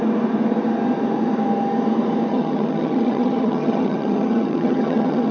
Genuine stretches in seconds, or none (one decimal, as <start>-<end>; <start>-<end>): 0.0-2.3